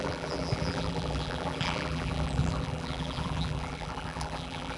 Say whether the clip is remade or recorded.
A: remade